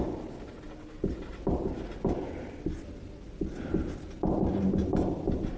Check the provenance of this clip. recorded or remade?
recorded